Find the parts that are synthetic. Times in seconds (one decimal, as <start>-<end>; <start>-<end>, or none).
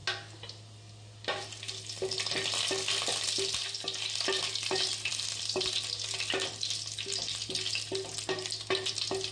none